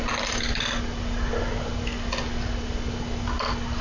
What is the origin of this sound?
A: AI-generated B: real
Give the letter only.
B